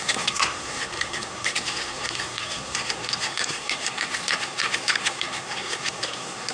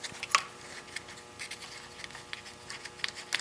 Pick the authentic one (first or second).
second